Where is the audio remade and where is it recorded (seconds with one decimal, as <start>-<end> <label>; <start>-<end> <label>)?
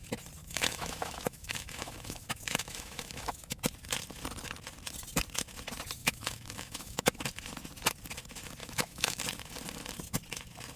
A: 0.0-0.4 recorded; 0.4-3.6 remade; 3.6-6.0 recorded; 6.0-7.2 remade; 7.2-8.6 recorded; 8.6-9.2 remade; 9.2-10.8 recorded